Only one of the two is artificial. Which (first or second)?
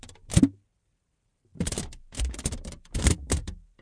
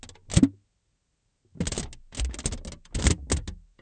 first